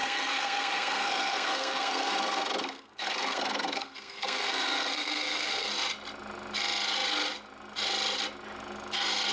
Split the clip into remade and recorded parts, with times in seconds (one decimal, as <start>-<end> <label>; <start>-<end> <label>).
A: 0.0-2.1 remade; 2.1-2.6 recorded; 2.6-5.7 remade; 5.7-9.3 recorded